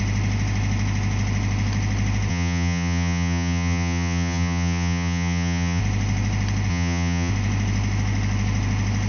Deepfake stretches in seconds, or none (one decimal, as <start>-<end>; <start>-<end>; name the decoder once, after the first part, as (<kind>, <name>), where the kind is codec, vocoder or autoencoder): 2.3-5.8 (vocoder, HiFi-GAN); 6.7-7.3

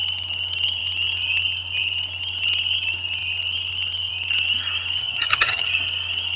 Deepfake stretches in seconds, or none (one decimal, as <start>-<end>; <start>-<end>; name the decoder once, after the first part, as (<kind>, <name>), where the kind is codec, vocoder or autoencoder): 5.0-5.7 (vocoder, HiFi-GAN)

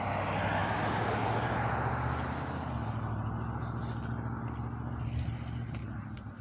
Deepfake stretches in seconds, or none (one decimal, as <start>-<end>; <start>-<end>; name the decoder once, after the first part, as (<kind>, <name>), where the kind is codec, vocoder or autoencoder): none

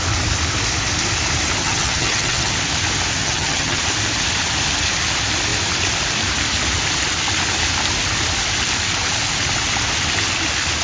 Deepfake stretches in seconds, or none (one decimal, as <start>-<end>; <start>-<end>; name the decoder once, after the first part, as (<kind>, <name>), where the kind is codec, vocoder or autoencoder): 1.6-2.5 (vocoder, HiFi-GAN); 3.2-3.8

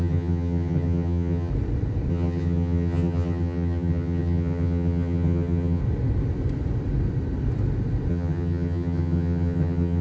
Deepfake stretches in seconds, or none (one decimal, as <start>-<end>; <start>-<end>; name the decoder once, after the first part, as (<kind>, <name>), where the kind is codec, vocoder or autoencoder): 0.0-1.5 (vocoder, HiFi-GAN); 2.1-5.8; 8.1-10.0

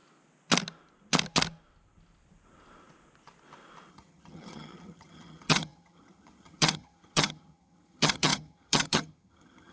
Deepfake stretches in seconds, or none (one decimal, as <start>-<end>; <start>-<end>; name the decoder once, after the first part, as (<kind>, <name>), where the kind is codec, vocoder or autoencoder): 3.9-9.7 (vocoder, HiFi-GAN)